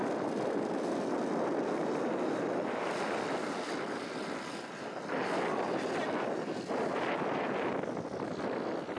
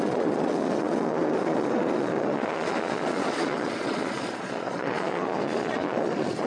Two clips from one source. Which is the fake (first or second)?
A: second